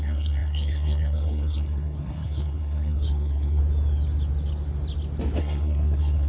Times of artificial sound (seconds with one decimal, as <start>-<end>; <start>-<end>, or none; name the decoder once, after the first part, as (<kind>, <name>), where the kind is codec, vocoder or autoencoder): 0.0-3.6 (codec, SNAC); 5.4-6.3